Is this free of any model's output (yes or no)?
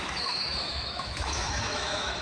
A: no